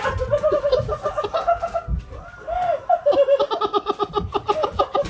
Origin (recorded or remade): recorded